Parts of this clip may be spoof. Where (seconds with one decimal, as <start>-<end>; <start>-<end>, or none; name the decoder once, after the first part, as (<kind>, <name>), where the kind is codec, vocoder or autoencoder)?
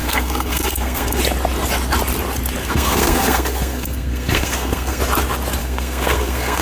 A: 0.0-1.2 (codec, SNAC); 2.6-5.0; 5.6-6.6